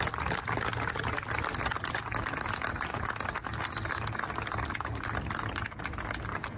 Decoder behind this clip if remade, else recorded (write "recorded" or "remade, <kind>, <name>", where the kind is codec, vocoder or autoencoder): recorded